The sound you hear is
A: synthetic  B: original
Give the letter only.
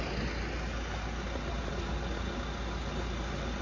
B